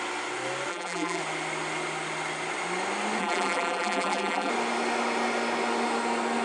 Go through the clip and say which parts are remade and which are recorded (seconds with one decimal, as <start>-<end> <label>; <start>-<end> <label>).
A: 0.0-0.7 recorded; 0.7-1.2 remade; 1.2-3.2 recorded; 3.2-4.5 remade; 4.5-6.4 recorded